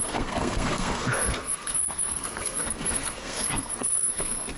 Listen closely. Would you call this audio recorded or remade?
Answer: remade